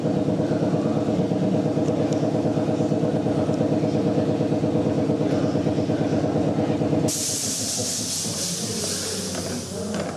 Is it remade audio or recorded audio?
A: recorded